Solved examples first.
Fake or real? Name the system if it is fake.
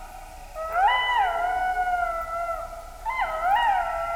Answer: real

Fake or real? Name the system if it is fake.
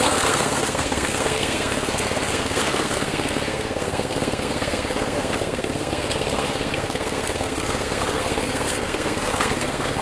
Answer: fake, codec, SNAC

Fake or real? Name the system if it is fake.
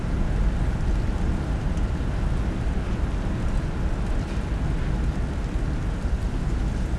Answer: real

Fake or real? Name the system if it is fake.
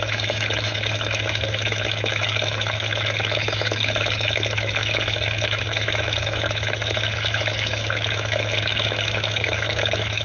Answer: fake, autoencoder, DAC-VAE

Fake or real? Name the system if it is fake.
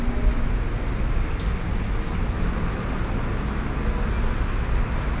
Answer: real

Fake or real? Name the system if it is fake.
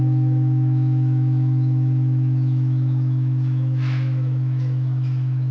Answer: fake, autoencoder, DAC-VAE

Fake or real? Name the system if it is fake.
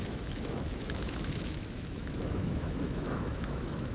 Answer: fake, autoencoder, DAC-VAE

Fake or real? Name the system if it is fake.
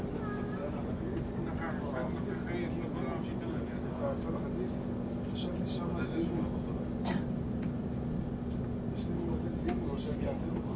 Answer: real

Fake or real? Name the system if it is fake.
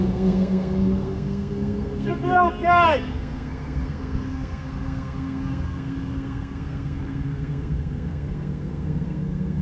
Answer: fake, codec, SNAC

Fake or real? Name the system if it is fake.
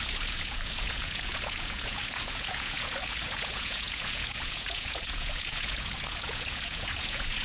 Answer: fake, vocoder, Vocos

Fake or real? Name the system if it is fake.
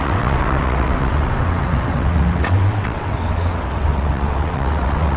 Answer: fake, vocoder, WaveNeXt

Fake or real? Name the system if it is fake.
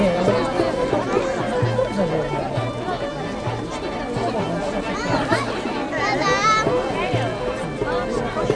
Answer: real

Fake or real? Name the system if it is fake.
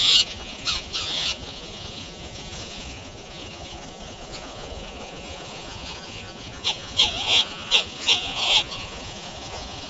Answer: fake, vocoder, Vocos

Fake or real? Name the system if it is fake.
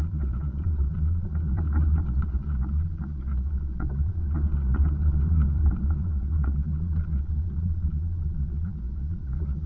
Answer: fake, vocoder, Vocos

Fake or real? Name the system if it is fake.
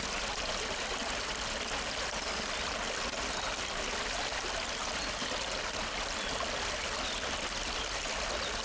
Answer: real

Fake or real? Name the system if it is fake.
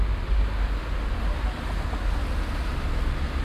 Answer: real